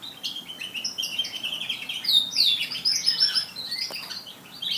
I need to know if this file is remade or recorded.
recorded